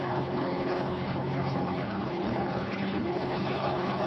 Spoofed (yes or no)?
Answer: yes